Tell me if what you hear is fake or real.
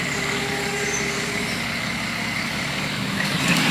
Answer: fake